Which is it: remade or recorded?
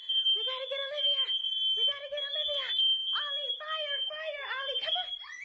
recorded